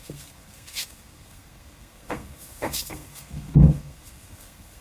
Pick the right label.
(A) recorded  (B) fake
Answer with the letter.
B